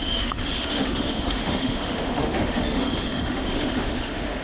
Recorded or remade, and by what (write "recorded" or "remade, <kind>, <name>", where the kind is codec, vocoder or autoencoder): remade, autoencoder, DAC-VAE